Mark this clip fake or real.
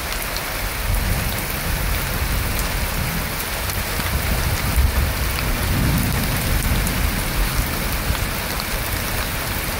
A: real